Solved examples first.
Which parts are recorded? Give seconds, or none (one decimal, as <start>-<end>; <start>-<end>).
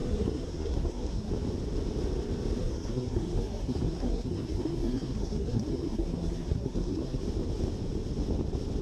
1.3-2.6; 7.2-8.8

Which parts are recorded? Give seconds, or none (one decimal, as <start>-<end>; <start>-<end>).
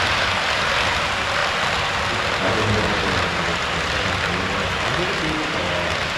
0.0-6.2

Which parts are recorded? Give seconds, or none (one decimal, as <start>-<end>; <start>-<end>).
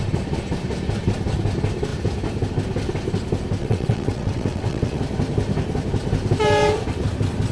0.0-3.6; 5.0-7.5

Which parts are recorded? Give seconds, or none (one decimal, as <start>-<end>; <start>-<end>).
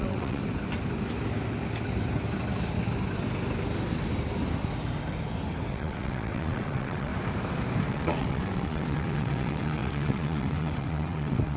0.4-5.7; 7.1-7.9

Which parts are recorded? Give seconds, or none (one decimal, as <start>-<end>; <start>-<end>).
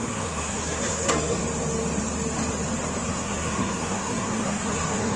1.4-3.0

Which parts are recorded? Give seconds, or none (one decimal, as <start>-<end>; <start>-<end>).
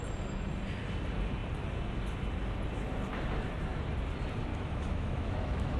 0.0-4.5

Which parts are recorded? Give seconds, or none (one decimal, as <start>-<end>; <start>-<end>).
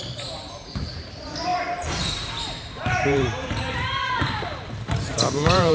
none